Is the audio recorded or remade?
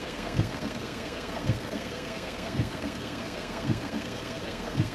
remade